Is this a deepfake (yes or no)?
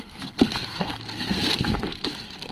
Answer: yes